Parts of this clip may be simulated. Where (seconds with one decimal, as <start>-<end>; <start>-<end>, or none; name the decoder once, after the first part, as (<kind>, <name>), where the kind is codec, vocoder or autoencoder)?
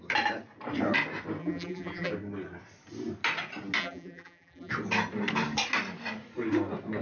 1.4-2.1 (vocoder, BigVGAN v2); 3.8-4.7